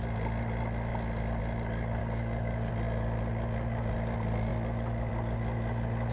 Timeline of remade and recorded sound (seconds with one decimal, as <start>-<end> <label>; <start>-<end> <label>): 0.0-2.0 recorded; 2.0-2.7 remade; 2.7-6.1 recorded